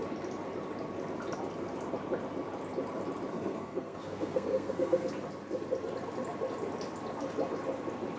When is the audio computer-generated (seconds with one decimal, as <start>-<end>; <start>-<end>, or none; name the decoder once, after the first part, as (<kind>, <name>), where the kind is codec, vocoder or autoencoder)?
3.3-5.1 (codec, SNAC)